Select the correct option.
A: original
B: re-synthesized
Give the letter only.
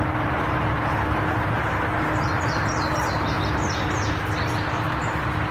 A